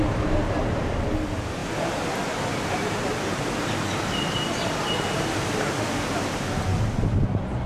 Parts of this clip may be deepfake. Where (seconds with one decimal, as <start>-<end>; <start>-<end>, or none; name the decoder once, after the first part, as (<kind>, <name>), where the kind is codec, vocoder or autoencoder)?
none